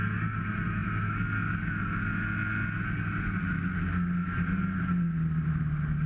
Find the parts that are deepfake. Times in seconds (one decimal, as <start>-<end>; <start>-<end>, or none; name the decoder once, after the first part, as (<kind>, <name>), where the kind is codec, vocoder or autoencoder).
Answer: none